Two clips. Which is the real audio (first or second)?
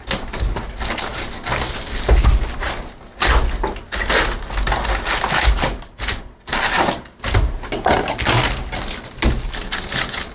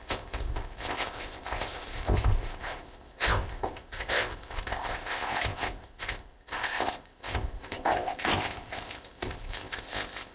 first